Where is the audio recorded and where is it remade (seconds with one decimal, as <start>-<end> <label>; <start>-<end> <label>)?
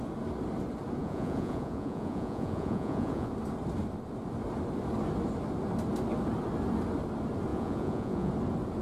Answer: 0.0-1.0 recorded; 1.0-3.3 remade; 3.3-7.5 recorded; 7.5-8.3 remade; 8.3-8.8 recorded